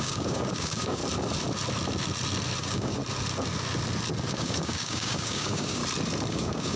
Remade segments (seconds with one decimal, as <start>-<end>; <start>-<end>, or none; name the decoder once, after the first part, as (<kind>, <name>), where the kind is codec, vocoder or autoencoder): 0.0-1.0 (codec, DAC); 2.6-3.0; 4.3-5.8; 6.3-6.8